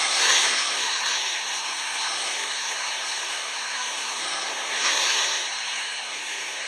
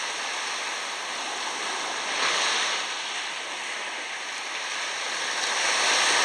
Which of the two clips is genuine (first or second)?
second